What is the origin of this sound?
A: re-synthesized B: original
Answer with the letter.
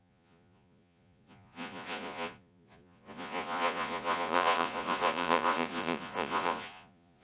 A